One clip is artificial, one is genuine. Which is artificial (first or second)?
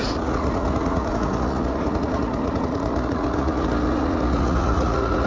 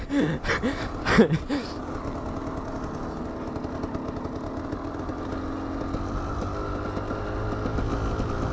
first